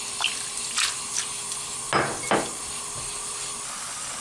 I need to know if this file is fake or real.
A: real